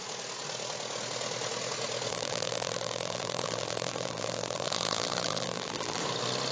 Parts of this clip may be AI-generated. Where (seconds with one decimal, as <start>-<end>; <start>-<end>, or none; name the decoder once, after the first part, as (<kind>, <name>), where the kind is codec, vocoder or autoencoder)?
2.1-6.0 (vocoder, BigVGAN v2)